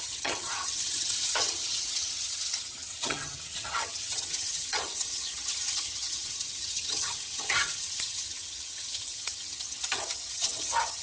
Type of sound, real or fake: fake